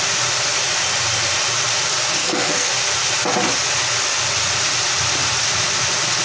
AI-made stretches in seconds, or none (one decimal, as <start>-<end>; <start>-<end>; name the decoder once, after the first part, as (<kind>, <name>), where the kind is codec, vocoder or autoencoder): 2.2-2.7 (codec, SNAC)